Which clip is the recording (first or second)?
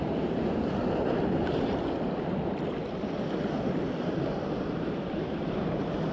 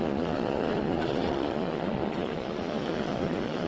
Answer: first